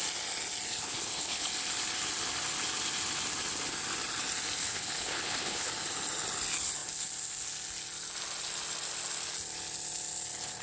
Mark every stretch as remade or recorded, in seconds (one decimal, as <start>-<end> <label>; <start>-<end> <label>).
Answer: 0.0-0.8 recorded; 0.8-1.5 remade; 1.5-4.6 recorded; 4.6-5.7 remade; 5.7-10.6 recorded